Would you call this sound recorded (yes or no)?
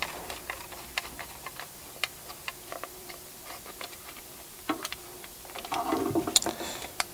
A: no